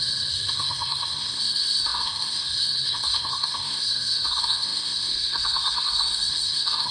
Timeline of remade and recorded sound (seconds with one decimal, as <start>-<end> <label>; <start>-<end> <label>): 0.0-6.9 remade